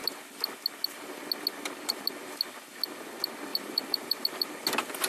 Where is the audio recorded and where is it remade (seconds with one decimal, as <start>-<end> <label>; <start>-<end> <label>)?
0.0-3.5 recorded; 3.5-4.5 remade; 4.5-5.1 recorded